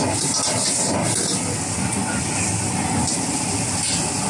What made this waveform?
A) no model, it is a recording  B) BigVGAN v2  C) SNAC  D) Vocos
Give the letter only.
A